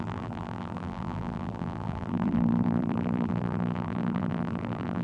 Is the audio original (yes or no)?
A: no